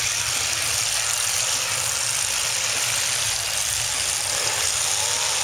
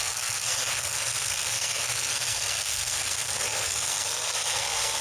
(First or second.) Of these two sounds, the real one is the first